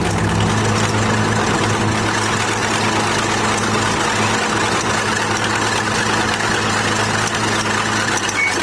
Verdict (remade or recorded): recorded